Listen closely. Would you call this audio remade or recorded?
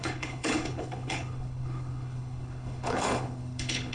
remade